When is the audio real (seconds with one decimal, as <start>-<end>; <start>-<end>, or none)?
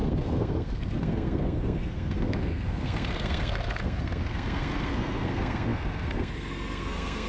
none